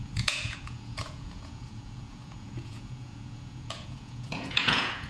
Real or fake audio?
fake